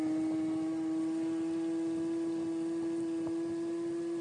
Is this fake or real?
real